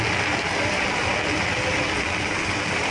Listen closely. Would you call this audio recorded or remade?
recorded